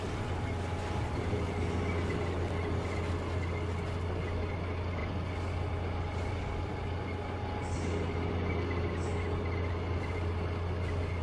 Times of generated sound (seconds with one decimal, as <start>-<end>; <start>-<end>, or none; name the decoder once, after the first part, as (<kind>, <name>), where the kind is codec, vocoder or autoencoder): none